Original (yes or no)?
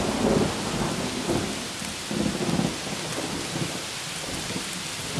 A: yes